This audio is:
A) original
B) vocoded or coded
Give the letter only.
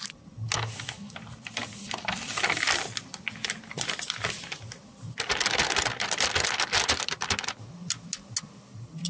A